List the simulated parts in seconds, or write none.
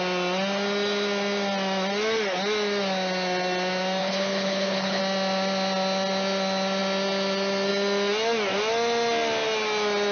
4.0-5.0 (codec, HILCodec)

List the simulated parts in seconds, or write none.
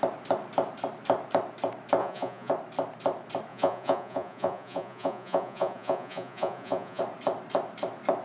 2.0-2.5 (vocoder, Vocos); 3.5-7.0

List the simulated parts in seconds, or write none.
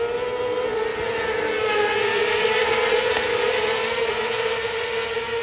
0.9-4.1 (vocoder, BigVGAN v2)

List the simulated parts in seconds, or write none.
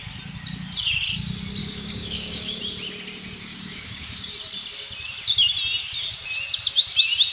1.6-2.6 (codec, DAC); 3.5-4.3